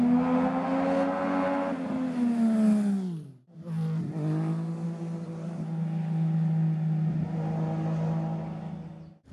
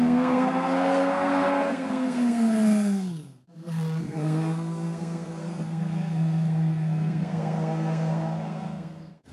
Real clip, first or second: first